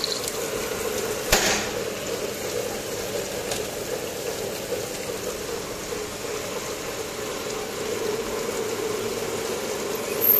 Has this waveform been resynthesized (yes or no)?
no